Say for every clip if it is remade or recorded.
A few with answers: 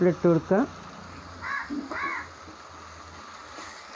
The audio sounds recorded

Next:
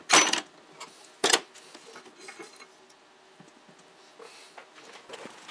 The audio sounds recorded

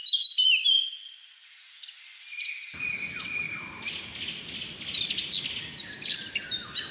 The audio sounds recorded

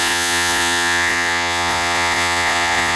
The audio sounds remade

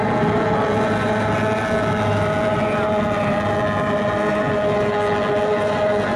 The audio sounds recorded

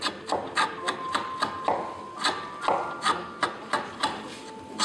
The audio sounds recorded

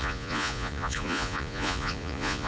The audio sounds remade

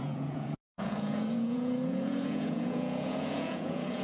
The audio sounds remade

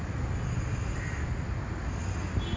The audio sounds recorded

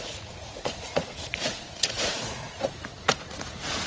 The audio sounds remade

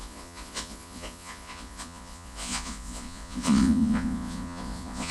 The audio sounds remade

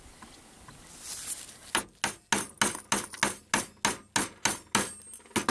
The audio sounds recorded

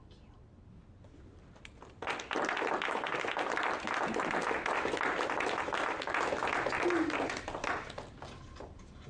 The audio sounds recorded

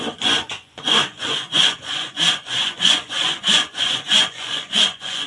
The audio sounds remade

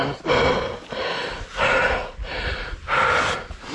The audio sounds recorded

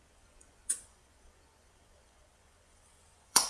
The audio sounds remade